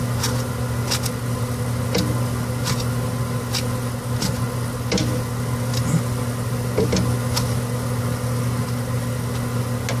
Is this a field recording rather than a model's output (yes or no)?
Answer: yes